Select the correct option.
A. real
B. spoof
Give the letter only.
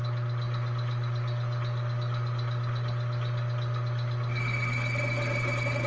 A